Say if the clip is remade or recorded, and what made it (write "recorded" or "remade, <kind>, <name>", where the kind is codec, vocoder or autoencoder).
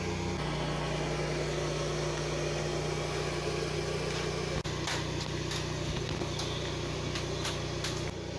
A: recorded